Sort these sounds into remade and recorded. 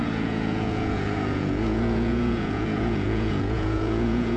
remade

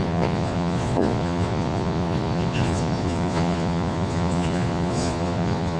remade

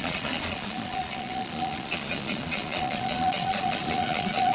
remade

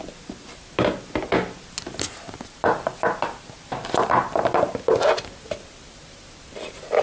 recorded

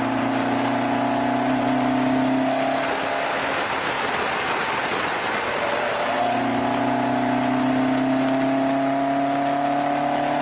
recorded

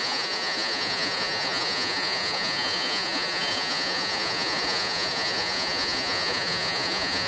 remade